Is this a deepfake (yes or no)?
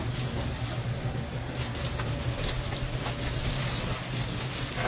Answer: no